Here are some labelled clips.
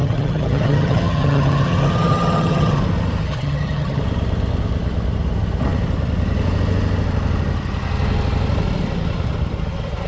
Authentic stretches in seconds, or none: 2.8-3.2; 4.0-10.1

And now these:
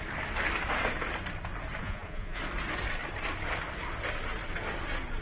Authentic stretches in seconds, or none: 0.0-1.8; 2.4-5.2

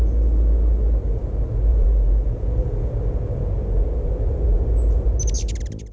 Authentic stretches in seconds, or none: 0.0-1.7; 2.9-5.9

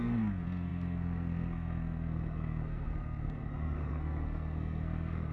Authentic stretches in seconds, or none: none

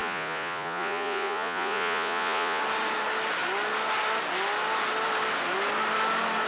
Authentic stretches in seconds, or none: 2.6-6.5

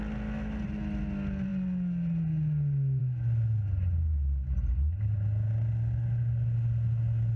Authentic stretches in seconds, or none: 0.0-7.4

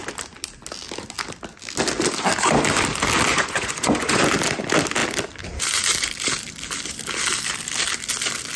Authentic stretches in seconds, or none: 0.0-3.3; 4.2-8.6